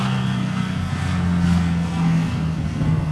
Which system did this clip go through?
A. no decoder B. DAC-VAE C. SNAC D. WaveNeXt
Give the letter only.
C